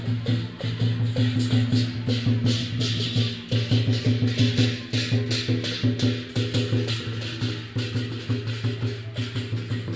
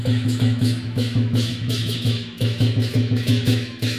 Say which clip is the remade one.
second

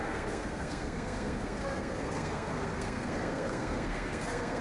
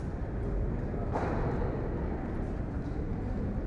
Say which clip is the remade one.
first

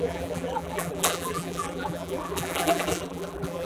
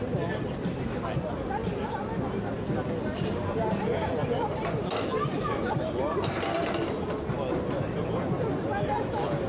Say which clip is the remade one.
first